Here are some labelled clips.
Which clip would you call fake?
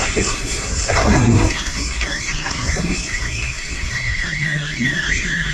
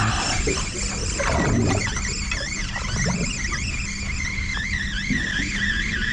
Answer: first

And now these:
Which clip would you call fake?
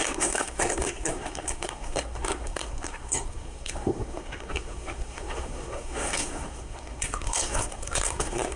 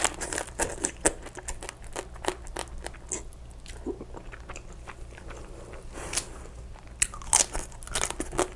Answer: first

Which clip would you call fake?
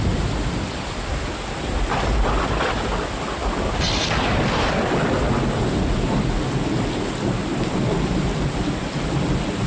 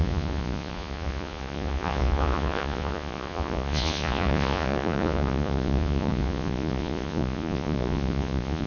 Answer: second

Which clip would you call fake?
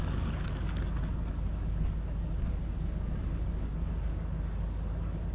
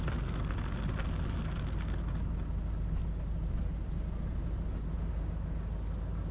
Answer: first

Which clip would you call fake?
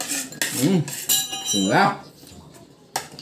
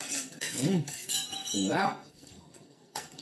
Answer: second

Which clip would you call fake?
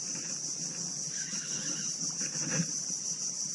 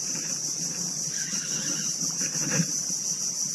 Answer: second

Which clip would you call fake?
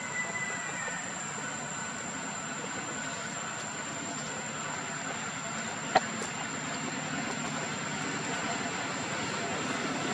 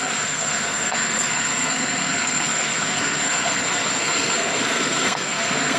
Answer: second